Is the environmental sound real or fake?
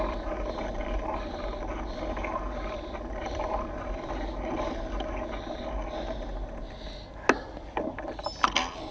real